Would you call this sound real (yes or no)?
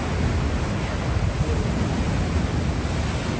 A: yes